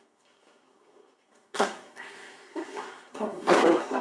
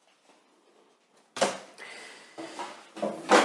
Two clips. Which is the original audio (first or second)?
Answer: second